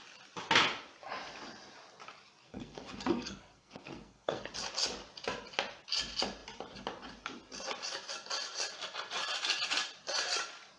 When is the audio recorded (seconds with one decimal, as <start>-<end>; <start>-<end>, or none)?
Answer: 0.0-2.4; 4.5-10.8